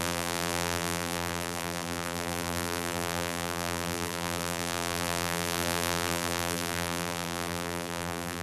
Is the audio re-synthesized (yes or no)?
yes